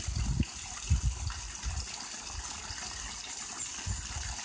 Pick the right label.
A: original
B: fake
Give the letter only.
A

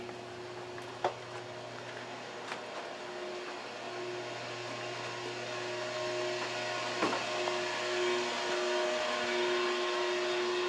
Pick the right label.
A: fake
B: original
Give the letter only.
B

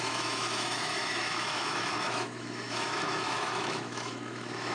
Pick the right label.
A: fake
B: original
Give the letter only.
A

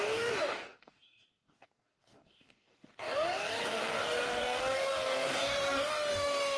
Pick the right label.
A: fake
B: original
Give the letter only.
A